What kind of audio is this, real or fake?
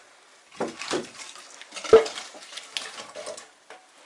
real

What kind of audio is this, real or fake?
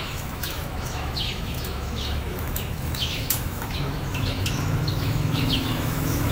fake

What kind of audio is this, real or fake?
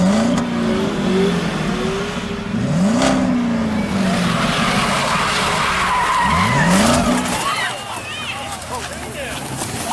real